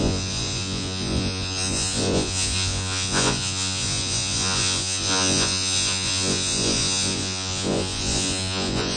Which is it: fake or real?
fake